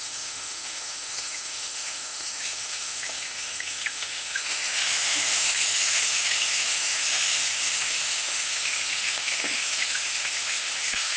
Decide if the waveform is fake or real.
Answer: fake